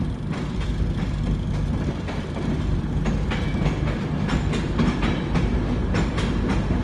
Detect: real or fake real